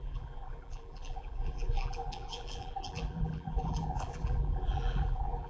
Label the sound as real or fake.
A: fake